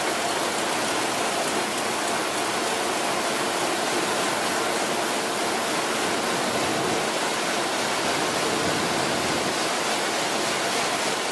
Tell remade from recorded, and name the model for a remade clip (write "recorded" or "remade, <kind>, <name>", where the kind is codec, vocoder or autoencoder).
recorded